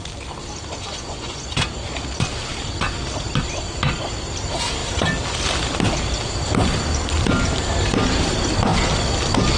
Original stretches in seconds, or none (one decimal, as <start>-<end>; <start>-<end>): 0.0-0.9; 1.5-9.6